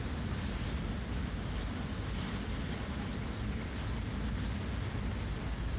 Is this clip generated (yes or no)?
no